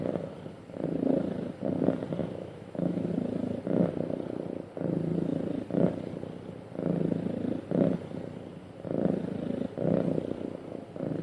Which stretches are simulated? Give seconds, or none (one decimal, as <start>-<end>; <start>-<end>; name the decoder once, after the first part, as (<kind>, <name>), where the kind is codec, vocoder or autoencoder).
2.2-3.1 (autoencoder, DAC-VAE)